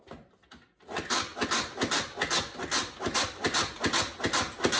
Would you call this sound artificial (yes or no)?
no